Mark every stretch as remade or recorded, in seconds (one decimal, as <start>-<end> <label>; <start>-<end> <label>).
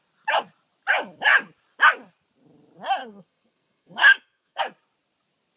0.0-3.0 recorded; 3.0-4.6 remade; 4.6-5.6 recorded